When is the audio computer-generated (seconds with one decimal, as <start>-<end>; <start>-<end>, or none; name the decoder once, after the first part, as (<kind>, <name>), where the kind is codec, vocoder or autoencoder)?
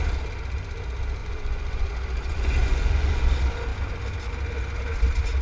1.2-1.9 (vocoder, Vocos); 2.3-3.3